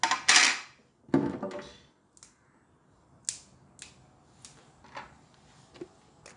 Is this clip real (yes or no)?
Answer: yes